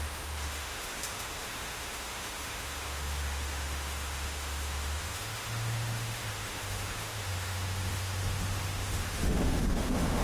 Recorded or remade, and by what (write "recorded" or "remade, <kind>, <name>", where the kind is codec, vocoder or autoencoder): remade, autoencoder, DAC-VAE